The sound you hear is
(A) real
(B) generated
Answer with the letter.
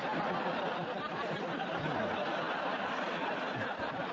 B